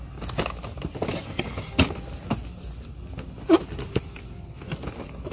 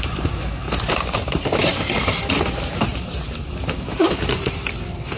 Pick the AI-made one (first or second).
second